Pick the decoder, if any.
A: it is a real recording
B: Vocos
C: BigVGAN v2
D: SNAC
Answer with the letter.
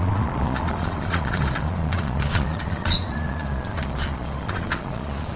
B